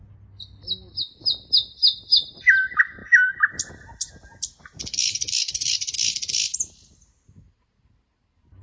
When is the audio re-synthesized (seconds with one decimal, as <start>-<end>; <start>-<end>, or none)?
4.9-5.9